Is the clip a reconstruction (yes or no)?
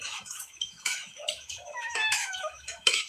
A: yes